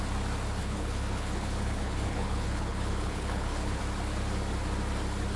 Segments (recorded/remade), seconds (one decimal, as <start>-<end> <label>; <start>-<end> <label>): 0.0-0.6 recorded; 0.6-3.8 remade; 3.8-5.4 recorded